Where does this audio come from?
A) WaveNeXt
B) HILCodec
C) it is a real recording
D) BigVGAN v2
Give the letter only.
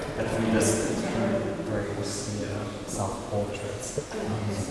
C